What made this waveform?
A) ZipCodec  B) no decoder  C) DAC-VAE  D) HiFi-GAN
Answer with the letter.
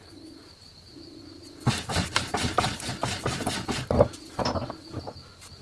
B